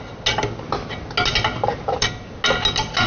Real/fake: real